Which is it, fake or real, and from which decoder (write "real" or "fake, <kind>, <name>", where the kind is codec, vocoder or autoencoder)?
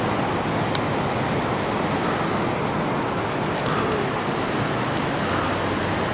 real